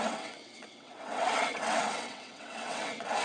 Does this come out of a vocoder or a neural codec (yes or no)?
yes